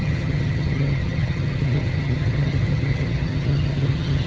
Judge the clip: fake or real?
fake